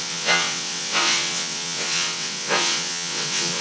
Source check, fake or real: fake